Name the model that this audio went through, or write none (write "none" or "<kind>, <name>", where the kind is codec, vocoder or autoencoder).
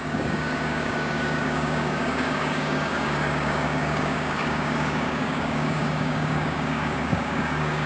codec, DAC